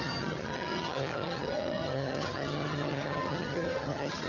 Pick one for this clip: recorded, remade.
remade